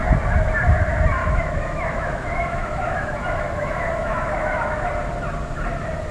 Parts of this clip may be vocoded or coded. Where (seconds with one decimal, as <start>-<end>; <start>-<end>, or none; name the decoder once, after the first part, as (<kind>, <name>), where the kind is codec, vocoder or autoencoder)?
1.2-4.9 (autoencoder, DAC-VAE)